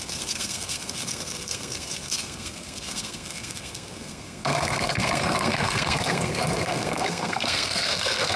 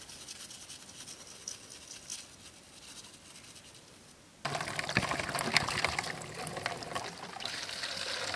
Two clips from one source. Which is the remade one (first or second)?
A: first